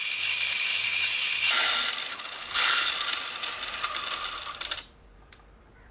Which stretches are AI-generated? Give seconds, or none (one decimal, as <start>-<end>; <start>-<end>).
2.1-2.9